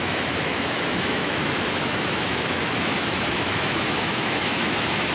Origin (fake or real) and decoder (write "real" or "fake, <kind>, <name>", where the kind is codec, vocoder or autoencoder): fake, autoencoder, DAC-VAE